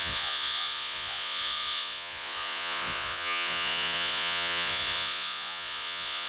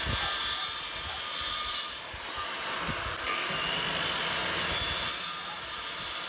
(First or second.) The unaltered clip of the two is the second